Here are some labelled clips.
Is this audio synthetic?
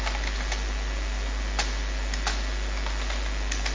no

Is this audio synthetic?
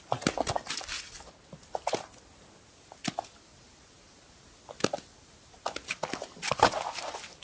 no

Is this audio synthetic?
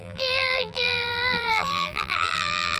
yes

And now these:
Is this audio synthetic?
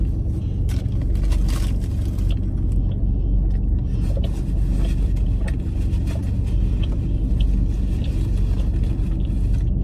no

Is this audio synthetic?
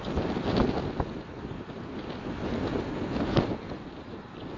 no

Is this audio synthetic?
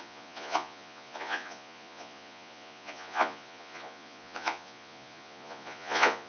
yes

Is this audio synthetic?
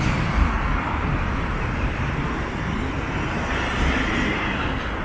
no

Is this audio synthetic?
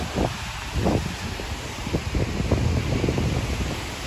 no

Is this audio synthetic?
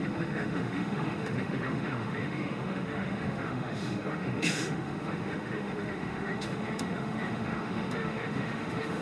yes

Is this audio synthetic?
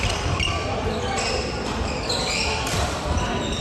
yes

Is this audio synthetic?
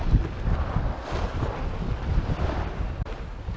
no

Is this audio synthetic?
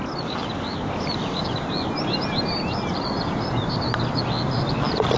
no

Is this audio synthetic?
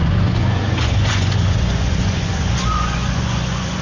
yes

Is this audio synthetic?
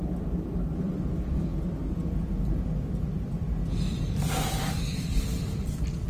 yes